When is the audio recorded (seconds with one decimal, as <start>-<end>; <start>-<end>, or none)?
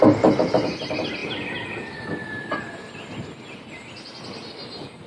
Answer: 0.0-5.1